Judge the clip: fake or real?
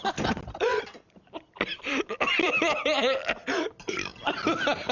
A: fake